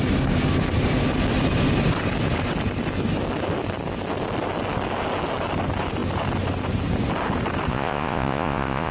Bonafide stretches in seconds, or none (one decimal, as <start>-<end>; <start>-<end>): 0.0-7.7